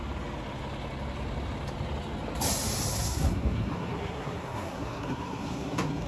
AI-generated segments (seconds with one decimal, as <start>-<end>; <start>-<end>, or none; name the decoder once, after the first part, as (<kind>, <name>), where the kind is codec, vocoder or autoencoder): 2.9-6.1 (codec, SNAC)